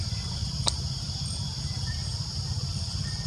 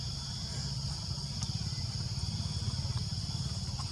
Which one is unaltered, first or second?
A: second